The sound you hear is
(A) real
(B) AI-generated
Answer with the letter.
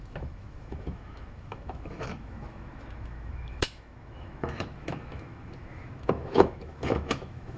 B